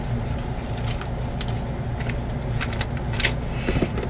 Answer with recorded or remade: recorded